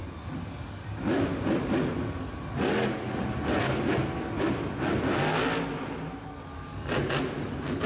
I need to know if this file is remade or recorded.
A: recorded